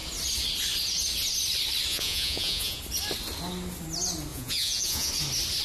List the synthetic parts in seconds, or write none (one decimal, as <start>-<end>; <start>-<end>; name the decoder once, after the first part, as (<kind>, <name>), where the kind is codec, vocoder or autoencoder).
1.9-2.8 (vocoder, Vocos); 4.3-5.1